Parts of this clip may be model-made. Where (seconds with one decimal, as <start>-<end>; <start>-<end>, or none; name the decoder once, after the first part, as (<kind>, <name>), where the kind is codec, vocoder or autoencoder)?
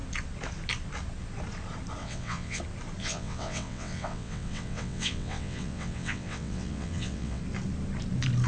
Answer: 2.0-2.6 (vocoder, WaveNeXt); 3.0-7.4